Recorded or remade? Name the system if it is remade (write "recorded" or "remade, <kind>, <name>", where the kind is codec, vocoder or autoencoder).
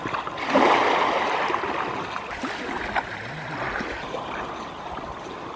recorded